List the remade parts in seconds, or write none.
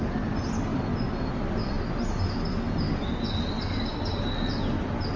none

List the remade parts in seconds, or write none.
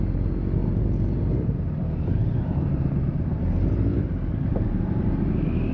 0.6-4.0 (vocoder, BigVGAN v2); 4.5-5.1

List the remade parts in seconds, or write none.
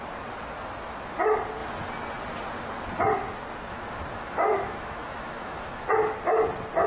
3.7-5.9 (autoencoder, DAC-VAE)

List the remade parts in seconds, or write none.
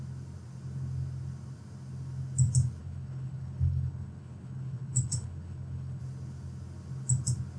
2.8-6.0 (codec, HILCodec)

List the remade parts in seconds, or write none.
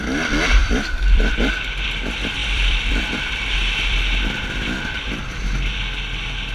0.6-1.5 (vocoder, BigVGAN v2); 2.4-4.0